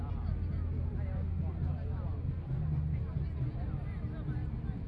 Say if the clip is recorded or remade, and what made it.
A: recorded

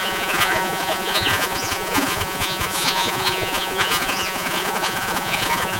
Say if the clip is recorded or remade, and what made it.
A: remade, vocoder, Vocos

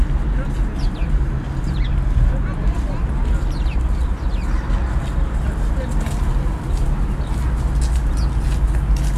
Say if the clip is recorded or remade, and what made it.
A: recorded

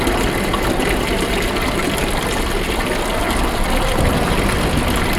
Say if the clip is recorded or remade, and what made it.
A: recorded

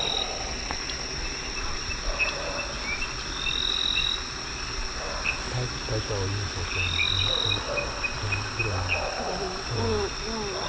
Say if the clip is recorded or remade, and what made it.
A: recorded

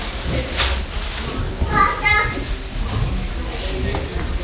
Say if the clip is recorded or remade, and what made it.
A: recorded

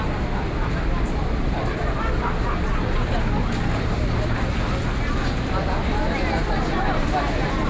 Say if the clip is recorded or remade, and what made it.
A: recorded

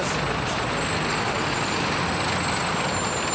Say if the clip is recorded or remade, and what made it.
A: recorded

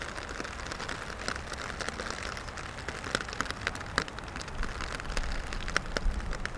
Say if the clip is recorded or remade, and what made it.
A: recorded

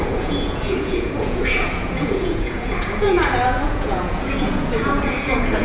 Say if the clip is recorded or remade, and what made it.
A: remade, vocoder, Vocos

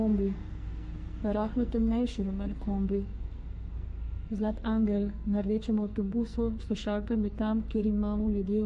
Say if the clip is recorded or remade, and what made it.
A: remade, codec, SNAC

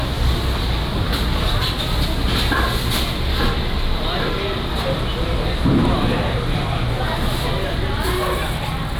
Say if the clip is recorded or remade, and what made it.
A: recorded